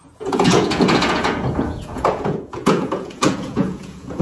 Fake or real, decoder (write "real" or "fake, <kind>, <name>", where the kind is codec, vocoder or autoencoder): fake, vocoder, Vocos